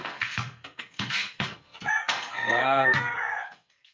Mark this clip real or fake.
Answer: fake